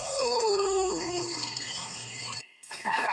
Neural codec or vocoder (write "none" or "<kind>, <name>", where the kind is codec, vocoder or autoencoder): codec, SNAC